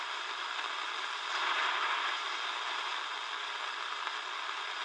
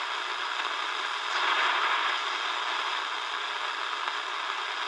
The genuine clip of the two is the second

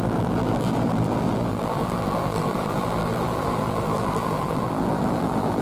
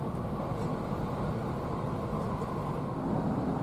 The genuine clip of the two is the second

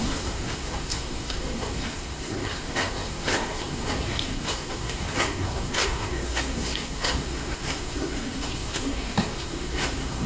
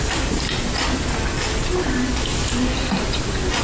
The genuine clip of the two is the second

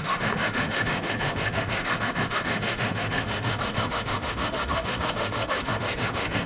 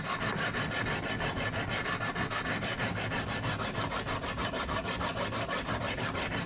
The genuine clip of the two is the second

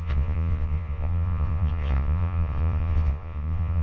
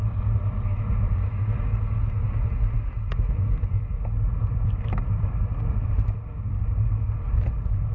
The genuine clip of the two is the second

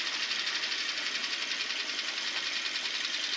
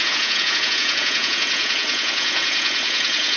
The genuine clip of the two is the first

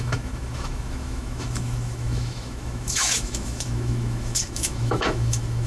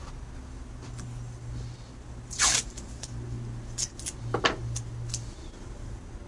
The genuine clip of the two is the second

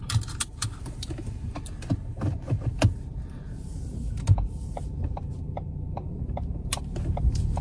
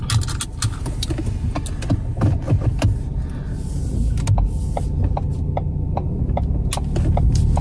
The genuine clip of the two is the second